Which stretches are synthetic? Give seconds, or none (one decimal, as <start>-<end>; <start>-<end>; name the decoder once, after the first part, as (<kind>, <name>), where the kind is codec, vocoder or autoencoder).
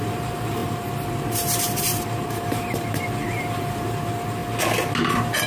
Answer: 0.0-4.4 (vocoder, BigVGAN v2); 5.1-5.5